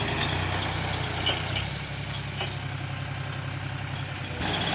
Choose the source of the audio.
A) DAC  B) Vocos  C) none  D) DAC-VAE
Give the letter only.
C